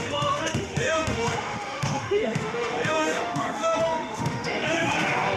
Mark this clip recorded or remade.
remade